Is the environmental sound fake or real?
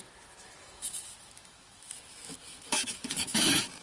fake